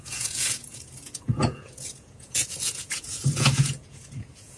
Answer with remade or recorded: remade